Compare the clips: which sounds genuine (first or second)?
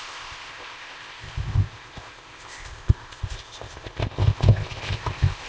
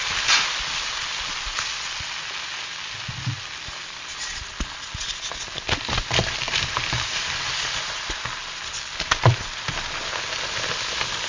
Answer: second